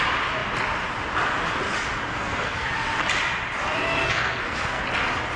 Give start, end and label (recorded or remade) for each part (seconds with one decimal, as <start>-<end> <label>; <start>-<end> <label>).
0.0-2.1 recorded; 2.1-2.7 remade; 2.7-4.0 recorded; 4.0-4.8 remade; 4.8-5.4 recorded

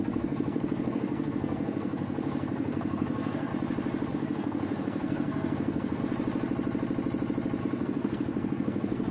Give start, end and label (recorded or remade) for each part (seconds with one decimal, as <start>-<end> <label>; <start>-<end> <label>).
0.0-3.5 remade; 3.5-4.1 recorded; 4.1-6.0 remade; 6.0-7.6 recorded; 7.6-9.1 remade

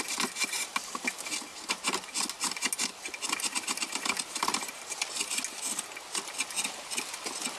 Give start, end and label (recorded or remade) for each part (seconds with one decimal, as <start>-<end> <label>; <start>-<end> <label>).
0.0-7.6 recorded